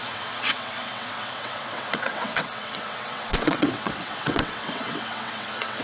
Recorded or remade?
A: remade